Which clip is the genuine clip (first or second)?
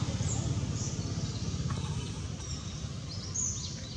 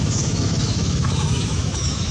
first